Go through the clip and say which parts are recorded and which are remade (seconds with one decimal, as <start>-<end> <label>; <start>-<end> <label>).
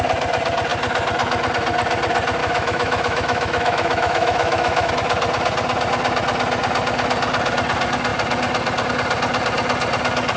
0.0-2.4 recorded; 2.4-4.9 remade; 4.9-10.4 recorded